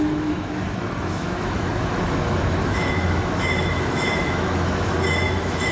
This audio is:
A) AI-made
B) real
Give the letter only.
A